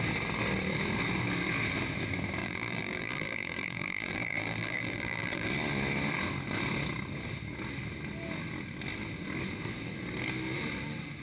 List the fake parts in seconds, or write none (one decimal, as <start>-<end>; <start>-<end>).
2.4-5.5

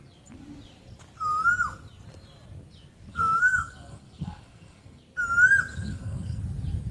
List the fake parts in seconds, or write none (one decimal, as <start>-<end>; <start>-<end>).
3.1-5.0; 5.7-6.4

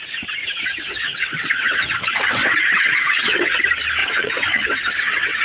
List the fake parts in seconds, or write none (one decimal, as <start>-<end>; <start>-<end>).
0.4-3.6; 4.0-5.4

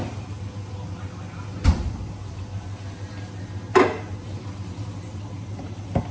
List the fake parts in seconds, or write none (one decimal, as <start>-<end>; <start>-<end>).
none